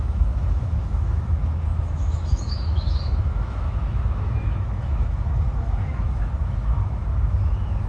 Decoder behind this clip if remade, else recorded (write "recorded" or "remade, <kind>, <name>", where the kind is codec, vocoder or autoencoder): remade, autoencoder, DAC-VAE